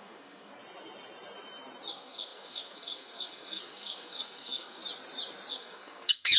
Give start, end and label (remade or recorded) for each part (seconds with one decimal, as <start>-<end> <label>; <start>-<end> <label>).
0.0-0.5 remade; 0.5-1.9 recorded; 1.9-4.8 remade; 4.8-5.5 recorded; 5.5-6.4 remade